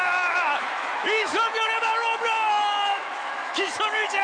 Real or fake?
fake